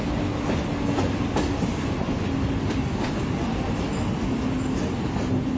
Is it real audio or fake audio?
real